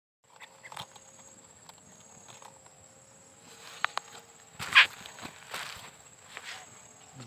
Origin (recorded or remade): recorded